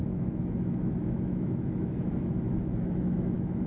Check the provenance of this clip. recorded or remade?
remade